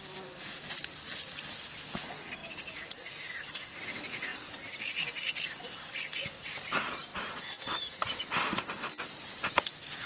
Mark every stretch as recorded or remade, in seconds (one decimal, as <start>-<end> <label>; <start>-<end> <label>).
0.0-10.1 recorded